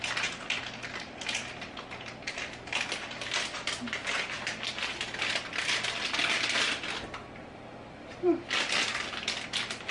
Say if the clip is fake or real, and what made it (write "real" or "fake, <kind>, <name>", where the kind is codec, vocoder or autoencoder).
real